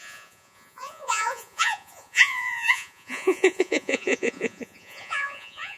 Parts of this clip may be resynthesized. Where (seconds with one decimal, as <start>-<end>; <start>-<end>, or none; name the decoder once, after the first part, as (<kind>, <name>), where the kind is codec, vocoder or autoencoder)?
0.0-5.8 (vocoder, Vocos)